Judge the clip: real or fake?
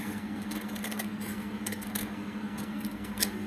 fake